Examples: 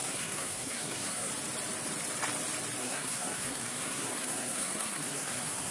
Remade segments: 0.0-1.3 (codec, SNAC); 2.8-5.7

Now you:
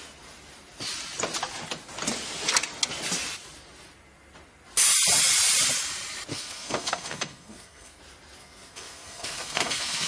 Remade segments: 6.3-8.0 (codec, SNAC); 8.4-10.1